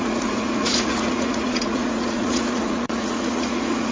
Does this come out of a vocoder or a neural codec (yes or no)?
yes